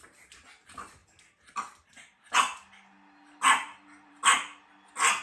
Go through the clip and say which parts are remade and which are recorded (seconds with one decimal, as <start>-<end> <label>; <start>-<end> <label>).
0.0-5.2 recorded